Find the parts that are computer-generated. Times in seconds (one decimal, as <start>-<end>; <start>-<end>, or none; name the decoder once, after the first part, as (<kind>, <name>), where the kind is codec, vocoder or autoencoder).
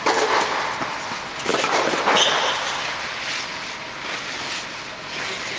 none